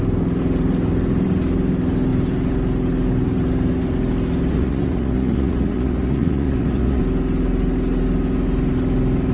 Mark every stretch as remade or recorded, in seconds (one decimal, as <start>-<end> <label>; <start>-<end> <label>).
0.0-4.5 recorded; 4.5-7.0 remade; 7.0-9.3 recorded